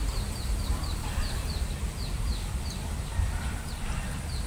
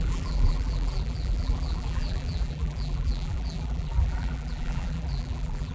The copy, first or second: second